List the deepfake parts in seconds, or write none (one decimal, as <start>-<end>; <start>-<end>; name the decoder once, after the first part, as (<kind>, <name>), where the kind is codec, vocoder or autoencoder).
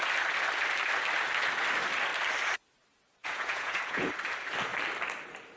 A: 3.2-4.1 (vocoder, Vocos)